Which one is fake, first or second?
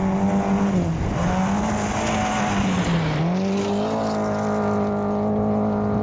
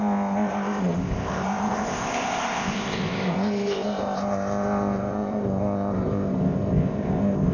second